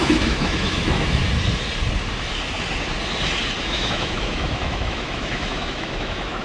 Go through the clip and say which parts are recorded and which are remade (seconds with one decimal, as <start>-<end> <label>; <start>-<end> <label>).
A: 0.0-1.2 remade; 1.2-3.6 recorded; 3.6-6.4 remade